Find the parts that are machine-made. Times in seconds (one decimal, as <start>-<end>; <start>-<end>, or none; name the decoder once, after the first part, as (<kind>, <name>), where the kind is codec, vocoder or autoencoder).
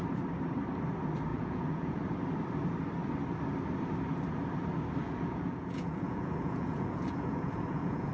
1.3-2.0 (vocoder, Vocos); 5.0-8.1